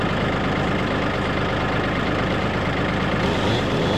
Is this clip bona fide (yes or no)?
yes